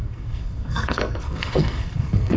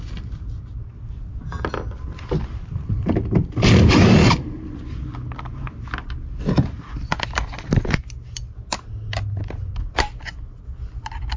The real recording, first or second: second